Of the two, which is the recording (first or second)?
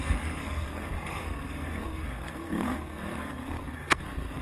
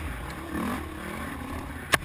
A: second